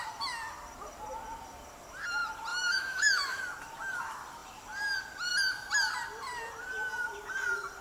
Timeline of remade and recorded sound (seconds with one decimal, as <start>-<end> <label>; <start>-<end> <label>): 0.0-2.5 recorded; 2.5-3.4 remade; 3.4-7.8 recorded